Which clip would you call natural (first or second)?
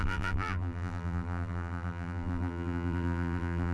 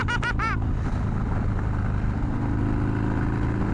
second